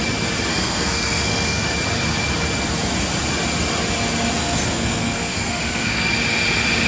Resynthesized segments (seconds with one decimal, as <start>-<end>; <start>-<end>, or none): 0.5-1.7; 4.4-6.1